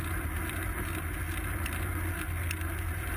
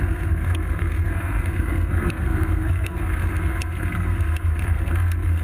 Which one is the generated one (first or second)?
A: second